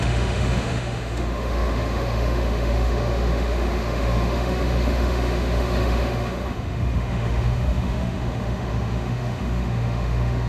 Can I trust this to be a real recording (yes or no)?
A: no